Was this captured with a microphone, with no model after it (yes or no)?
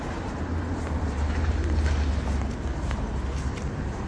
yes